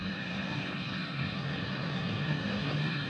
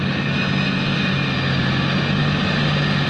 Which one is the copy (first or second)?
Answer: first